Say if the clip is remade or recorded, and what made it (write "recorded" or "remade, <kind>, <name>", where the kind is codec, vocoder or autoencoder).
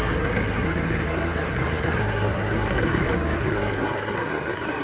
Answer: remade, codec, SNAC